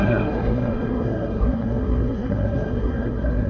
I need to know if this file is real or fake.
fake